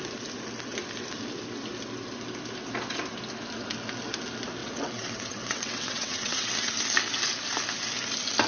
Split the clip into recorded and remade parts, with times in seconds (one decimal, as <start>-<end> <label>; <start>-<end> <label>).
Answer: 0.0-4.6 recorded; 4.6-6.5 remade; 6.5-8.5 recorded